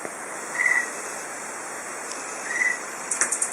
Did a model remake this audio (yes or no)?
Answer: no